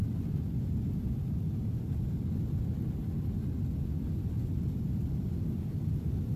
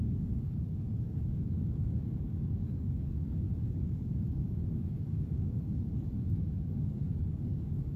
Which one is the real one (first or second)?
first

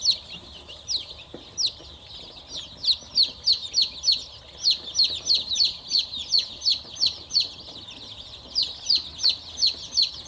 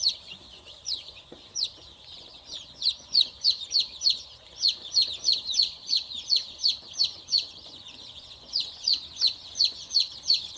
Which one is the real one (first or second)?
first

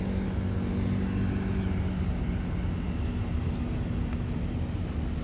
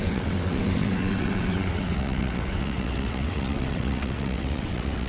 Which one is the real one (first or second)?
first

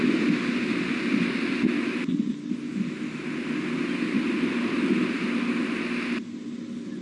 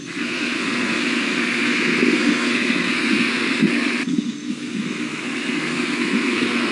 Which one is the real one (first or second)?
first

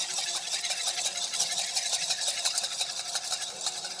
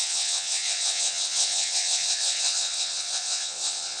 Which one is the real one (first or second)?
first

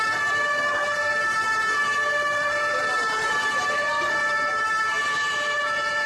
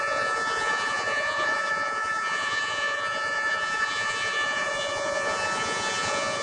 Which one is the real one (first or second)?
first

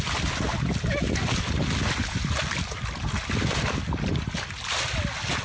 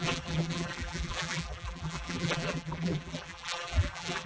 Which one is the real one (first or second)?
first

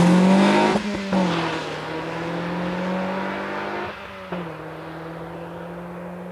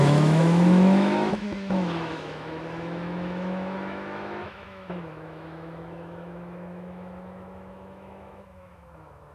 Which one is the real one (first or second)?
first